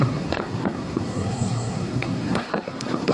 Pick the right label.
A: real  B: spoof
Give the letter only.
B